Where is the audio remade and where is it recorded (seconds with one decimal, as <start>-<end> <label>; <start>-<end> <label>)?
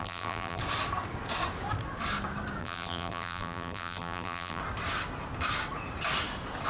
0.0-0.6 remade; 0.6-2.6 recorded; 2.6-4.6 remade; 4.6-6.7 recorded